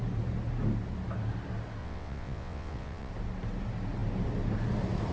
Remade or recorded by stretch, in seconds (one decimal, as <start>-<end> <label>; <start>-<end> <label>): 0.0-1.8 recorded; 1.8-3.1 remade; 3.1-5.1 recorded